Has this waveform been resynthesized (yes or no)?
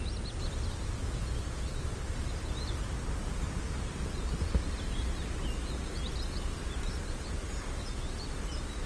no